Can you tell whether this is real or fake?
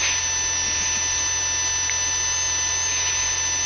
real